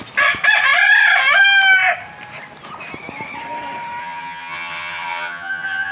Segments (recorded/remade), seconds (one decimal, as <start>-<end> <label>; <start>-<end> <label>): 0.0-4.0 recorded; 4.0-5.9 remade